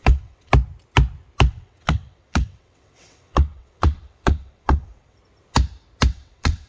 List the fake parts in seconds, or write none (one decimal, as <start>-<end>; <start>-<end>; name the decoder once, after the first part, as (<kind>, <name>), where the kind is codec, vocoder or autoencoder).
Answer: 0.0-0.5 (vocoder, WaveNeXt); 1.5-5.2; 6.1-6.7